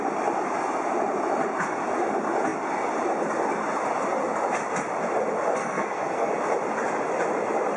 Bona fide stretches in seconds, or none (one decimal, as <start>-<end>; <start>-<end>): 0.0-5.5; 6.3-7.8